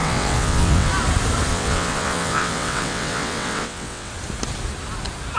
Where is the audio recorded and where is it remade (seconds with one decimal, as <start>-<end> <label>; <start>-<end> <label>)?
0.0-0.9 remade; 0.9-1.5 recorded; 1.5-4.1 remade; 4.1-5.4 recorded